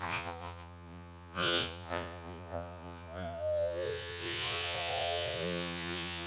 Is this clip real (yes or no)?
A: no